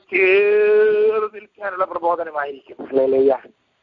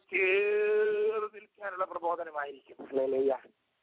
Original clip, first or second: first